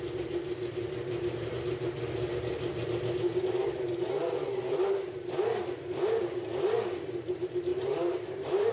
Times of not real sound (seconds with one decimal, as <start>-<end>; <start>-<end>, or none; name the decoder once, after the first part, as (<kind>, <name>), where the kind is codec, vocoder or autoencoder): 7.7-8.7 (vocoder, BigVGAN v2)

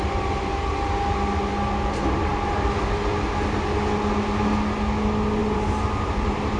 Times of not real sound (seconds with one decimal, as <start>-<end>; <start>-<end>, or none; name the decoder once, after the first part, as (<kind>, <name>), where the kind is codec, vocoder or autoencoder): 5.4-6.6 (vocoder, BigVGAN v2)

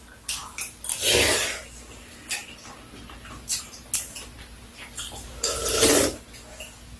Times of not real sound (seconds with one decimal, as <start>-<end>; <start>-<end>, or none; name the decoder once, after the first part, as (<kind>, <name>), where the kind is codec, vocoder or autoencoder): none

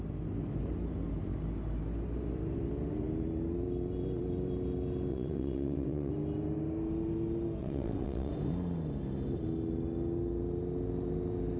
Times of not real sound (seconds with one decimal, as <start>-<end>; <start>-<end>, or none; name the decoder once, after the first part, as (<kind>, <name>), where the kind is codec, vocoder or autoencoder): 5.1-6.1 (vocoder, WaveNeXt); 7.6-8.3

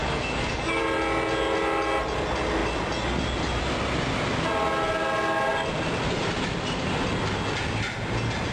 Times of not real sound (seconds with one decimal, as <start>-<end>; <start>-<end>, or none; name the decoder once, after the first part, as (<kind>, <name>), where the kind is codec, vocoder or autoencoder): 0.0-0.8 (codec, DAC)

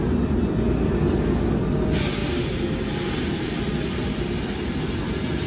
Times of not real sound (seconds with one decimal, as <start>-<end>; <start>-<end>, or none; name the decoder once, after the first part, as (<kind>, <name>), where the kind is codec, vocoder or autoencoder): none

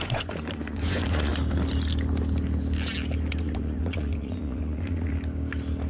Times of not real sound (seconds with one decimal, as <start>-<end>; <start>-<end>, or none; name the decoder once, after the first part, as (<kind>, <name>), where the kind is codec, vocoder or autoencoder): 0.0-1.3 (vocoder, Vocos); 3.4-5.1

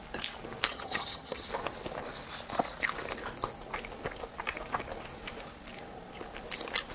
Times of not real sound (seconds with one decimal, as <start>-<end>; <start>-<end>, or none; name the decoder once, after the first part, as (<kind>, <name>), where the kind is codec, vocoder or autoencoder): 0.7-1.5 (vocoder, HiFi-GAN)